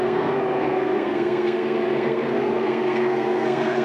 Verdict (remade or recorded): remade